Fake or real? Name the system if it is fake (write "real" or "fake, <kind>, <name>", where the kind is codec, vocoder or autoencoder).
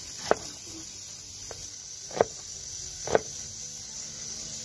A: real